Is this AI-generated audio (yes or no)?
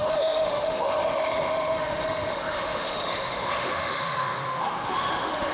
yes